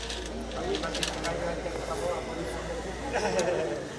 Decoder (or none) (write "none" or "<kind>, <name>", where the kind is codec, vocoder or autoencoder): none